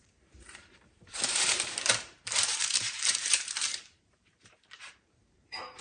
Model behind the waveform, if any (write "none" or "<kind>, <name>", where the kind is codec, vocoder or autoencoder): vocoder, BigVGAN v2